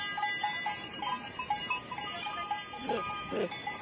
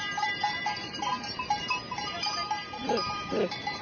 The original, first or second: first